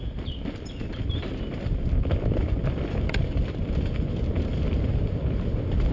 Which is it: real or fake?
real